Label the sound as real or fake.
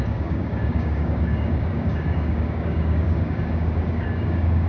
fake